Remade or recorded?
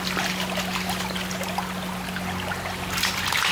recorded